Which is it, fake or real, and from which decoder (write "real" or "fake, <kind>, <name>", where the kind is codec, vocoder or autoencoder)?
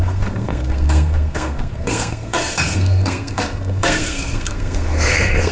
fake, codec, SNAC